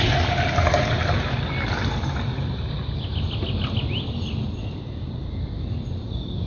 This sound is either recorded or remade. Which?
recorded